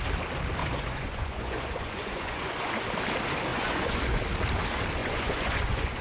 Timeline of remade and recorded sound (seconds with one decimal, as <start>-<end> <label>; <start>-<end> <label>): 0.0-0.6 recorded; 0.6-2.7 remade; 2.7-3.5 recorded; 3.5-4.2 remade; 4.2-5.0 recorded; 5.0-6.0 remade